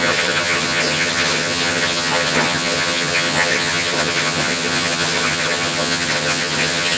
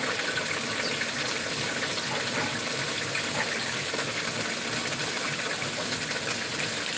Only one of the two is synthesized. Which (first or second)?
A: first